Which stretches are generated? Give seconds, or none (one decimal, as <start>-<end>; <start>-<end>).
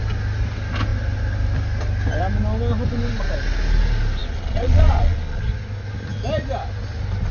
4.2-5.4